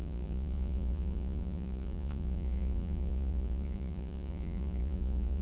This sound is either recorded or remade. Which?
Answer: remade